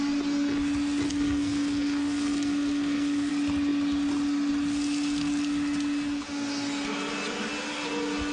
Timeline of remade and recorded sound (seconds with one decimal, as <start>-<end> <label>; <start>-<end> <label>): 0.0-1.1 recorded; 1.1-3.3 remade; 3.3-8.3 recorded